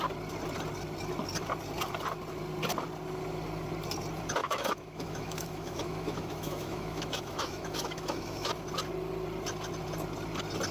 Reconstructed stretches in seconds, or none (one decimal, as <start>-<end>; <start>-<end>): 4.4-8.5

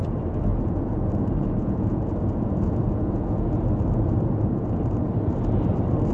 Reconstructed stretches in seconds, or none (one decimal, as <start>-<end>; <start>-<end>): 0.5-3.6

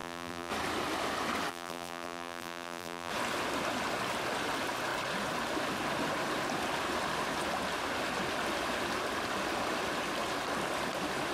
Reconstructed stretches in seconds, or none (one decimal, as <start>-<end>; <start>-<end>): 0.0-0.5; 1.5-3.1

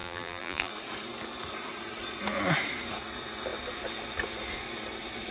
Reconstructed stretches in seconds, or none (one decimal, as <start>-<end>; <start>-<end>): 0.0-0.7